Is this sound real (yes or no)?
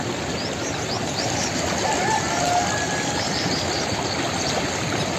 yes